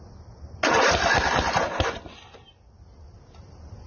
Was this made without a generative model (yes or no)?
yes